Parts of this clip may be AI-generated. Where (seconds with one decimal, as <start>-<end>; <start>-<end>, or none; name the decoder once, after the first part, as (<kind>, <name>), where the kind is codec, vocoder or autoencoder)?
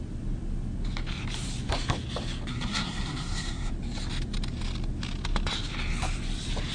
2.5-3.7 (codec, SNAC)